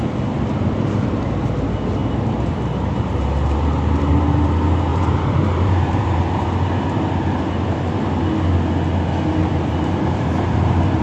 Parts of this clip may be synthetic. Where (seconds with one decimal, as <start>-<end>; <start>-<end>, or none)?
4.9-6.2; 9.4-11.0